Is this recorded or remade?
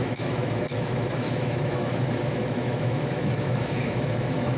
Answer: remade